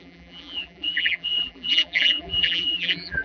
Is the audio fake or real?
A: fake